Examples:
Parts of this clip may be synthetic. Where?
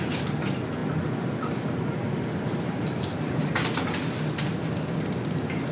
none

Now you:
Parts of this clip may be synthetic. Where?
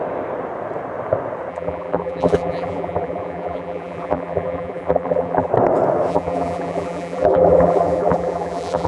1.5-5.5 (vocoder, BigVGAN v2); 6.1-8.9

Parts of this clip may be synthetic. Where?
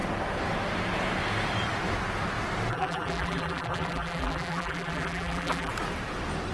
2.7-5.7 (vocoder, BigVGAN v2)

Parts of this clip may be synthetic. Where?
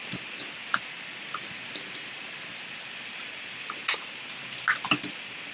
none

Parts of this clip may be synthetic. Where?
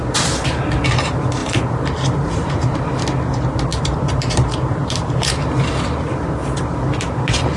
1.4-2.8 (vocoder, BigVGAN v2); 3.7-5.4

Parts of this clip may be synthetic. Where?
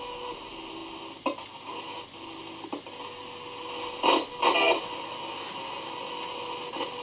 none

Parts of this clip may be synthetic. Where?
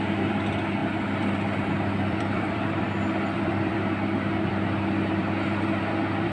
0.8-4.5 (vocoder, BigVGAN v2); 5.2-6.3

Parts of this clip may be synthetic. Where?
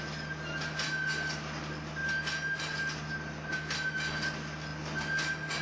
none